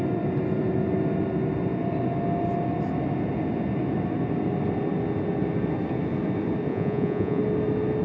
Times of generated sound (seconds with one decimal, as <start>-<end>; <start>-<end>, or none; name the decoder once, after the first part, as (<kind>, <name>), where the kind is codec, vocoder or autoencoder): 6.7-7.4 (vocoder, Vocos)